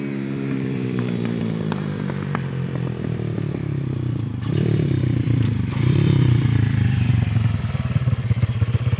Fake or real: fake